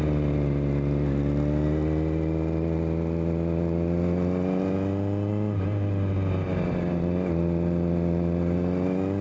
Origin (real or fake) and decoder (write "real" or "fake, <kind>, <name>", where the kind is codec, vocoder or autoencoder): real